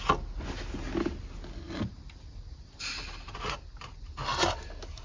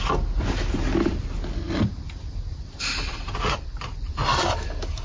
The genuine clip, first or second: first